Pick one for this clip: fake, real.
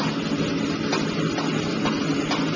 real